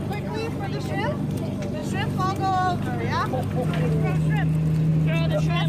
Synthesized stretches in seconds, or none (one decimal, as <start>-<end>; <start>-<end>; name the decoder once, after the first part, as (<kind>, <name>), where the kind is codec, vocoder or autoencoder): none